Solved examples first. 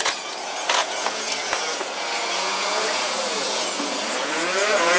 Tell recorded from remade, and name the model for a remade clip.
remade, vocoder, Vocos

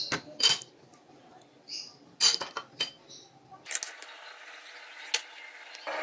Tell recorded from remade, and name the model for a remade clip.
recorded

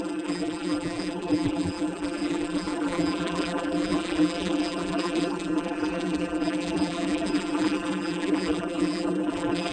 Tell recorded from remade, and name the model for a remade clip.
remade, vocoder, BigVGAN v2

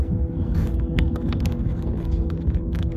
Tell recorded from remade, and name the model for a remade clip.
remade, codec, SNAC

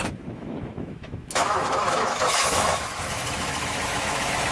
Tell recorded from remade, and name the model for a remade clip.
remade, autoencoder, DAC-VAE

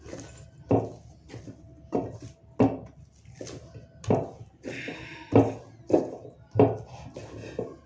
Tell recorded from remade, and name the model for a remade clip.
recorded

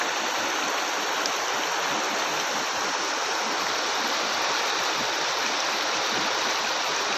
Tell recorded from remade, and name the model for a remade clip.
recorded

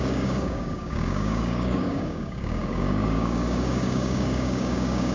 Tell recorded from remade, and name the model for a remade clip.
remade, codec, DAC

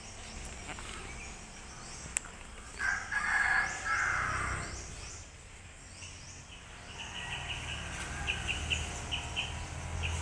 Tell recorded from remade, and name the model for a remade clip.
recorded